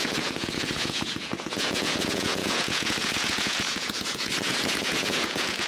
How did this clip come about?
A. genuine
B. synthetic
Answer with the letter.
B